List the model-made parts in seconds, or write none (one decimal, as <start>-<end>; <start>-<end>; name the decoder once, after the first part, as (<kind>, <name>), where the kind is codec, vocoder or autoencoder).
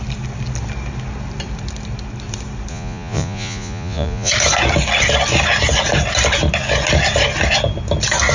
2.7-4.3 (vocoder, Vocos)